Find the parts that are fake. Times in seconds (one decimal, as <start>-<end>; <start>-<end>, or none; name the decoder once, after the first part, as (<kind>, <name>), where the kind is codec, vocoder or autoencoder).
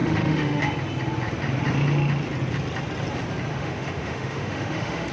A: 0.0-0.6 (autoencoder, DAC-VAE); 3.5-5.1